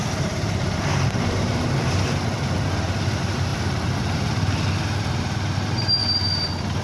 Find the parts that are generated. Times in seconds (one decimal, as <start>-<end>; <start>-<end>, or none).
0.0-2.2; 3.5-6.0